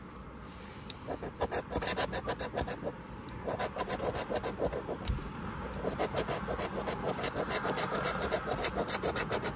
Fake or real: fake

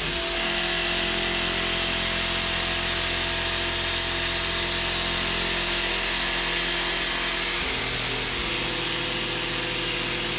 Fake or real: real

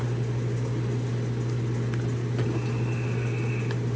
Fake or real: real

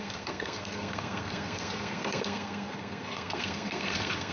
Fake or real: fake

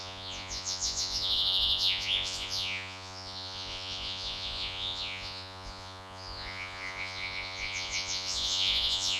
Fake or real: fake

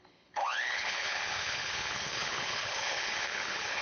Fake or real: fake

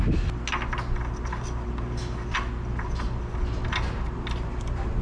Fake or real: real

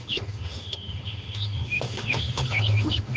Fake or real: fake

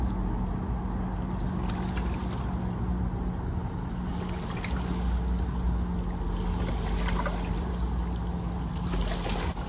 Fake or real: real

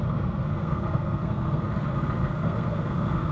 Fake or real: fake